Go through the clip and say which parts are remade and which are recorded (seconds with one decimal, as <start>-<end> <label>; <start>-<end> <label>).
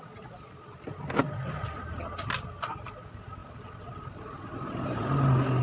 0.0-5.6 recorded